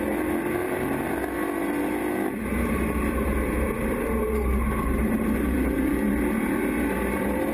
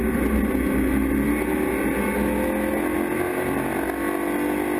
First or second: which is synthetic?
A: first